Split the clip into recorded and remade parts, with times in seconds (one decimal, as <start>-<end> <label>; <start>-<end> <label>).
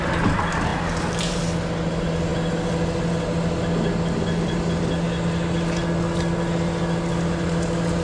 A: 0.0-8.0 recorded